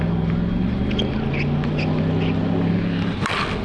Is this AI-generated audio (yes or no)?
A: no